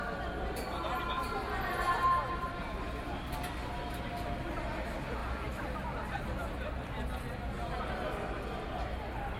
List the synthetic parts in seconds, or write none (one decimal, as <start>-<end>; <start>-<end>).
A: none